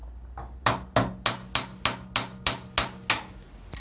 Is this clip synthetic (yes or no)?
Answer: no